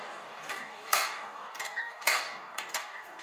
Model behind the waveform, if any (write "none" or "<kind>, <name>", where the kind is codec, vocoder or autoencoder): codec, DAC